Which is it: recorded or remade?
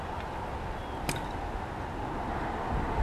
recorded